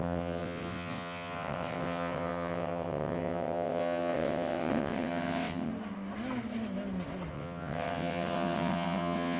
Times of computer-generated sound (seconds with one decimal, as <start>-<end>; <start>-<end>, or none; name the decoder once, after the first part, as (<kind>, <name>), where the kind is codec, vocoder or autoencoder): 0.0-5.7 (vocoder, WaveNeXt); 7.3-9.4